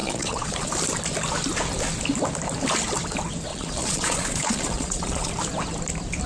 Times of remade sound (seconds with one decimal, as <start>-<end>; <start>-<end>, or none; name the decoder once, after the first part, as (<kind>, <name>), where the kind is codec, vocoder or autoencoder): 0.0-0.7 (vocoder, Vocos); 3.5-5.3